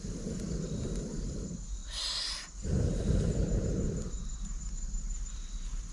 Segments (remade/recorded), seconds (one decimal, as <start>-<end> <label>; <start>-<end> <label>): 0.0-5.9 recorded